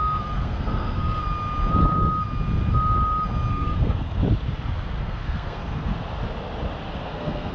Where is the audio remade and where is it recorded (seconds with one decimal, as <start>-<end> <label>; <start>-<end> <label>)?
0.0-1.2 remade; 1.2-3.5 recorded; 3.5-4.2 remade; 4.2-5.0 recorded; 5.0-5.9 remade; 5.9-6.9 recorded; 6.9-7.5 remade